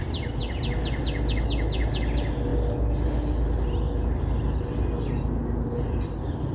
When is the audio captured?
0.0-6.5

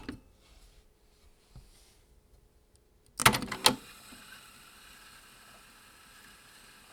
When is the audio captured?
0.0-6.9

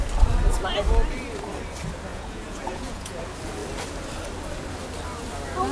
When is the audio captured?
0.0-2.1; 3.2-5.7

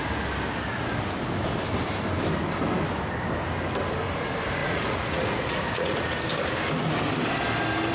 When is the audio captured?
0.0-4.6; 6.1-7.9

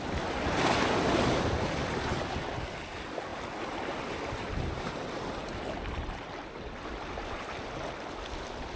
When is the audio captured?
0.0-8.8

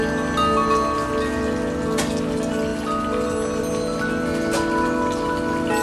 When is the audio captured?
0.0-5.8